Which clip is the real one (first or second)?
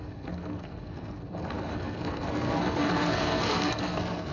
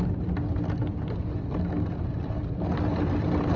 second